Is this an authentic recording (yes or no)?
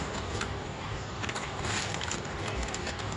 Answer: no